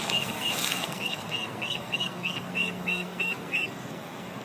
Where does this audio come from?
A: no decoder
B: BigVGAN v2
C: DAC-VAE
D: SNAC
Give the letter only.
D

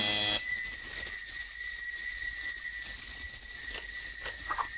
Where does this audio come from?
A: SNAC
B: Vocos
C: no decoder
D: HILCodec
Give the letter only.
C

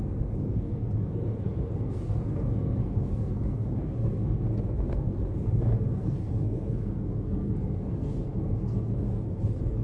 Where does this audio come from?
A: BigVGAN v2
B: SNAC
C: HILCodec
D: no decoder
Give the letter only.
B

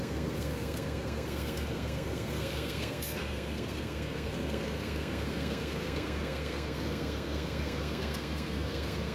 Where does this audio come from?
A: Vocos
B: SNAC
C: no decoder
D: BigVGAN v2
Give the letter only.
B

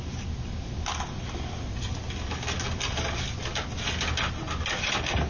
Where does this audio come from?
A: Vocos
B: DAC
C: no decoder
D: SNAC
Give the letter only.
C